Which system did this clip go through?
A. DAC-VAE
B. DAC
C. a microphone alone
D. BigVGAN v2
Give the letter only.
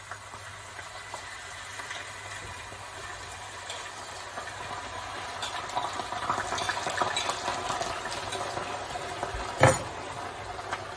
C